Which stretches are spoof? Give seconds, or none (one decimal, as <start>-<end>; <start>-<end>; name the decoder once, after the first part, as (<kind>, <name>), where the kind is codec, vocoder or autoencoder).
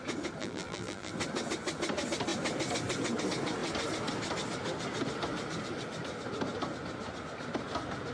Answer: 0.4-1.1 (vocoder, BigVGAN v2)